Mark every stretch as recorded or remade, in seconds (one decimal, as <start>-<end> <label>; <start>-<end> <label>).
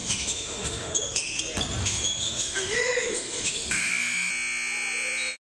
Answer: 0.0-1.4 remade; 1.4-1.8 recorded; 1.8-4.3 remade; 4.3-5.4 recorded